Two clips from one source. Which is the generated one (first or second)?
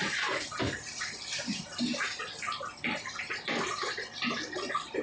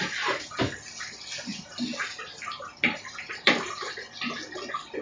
first